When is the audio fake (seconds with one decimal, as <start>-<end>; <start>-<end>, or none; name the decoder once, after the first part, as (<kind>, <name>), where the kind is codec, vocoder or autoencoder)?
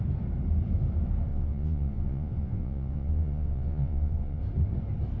1.3-4.4 (vocoder, Vocos)